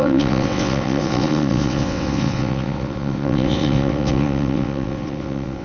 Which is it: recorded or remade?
remade